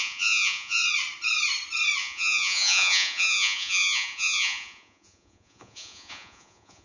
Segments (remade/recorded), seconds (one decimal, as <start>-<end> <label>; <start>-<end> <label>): 0.0-0.8 remade; 0.8-2.0 recorded; 2.0-6.8 remade